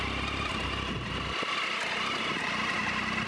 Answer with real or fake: real